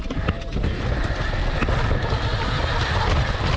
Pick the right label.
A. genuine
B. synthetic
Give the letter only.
A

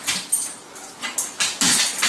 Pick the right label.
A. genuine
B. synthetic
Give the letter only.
A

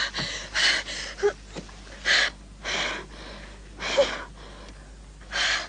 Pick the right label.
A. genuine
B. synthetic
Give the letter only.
A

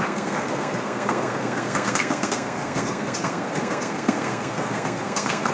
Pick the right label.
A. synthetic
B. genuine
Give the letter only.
A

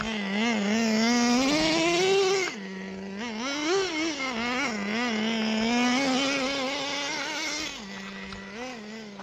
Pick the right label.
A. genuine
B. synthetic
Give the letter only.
A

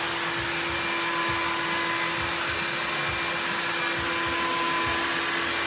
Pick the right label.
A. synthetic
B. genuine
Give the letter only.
B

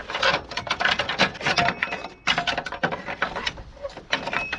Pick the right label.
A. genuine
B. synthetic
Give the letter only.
A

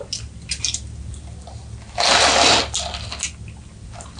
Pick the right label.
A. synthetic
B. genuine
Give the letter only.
B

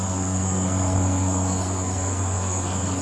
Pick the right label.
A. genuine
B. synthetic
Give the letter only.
B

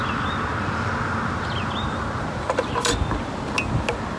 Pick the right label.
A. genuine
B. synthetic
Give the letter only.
A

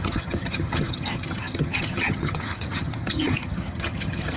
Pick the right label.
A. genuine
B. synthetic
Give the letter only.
B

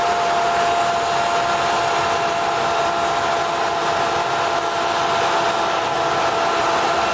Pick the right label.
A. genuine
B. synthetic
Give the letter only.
A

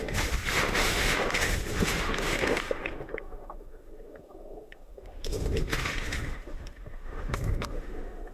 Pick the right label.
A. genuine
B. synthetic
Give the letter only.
B